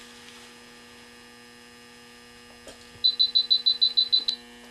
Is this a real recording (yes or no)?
yes